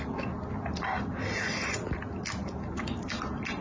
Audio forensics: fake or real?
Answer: real